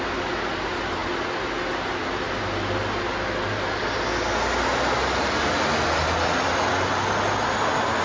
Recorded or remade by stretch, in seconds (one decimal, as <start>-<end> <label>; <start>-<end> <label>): 0.0-8.0 recorded